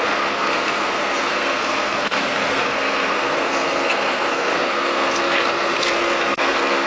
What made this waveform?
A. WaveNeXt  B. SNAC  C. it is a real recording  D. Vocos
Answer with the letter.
B